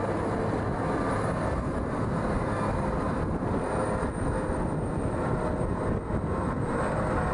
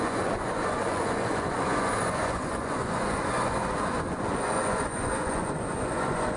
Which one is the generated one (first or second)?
second